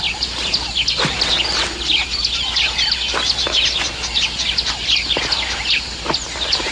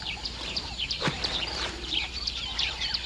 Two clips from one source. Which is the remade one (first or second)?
second